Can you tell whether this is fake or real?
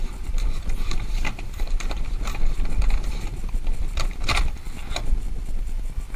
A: fake